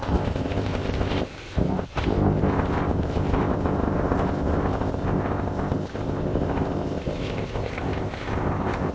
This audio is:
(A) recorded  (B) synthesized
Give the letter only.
B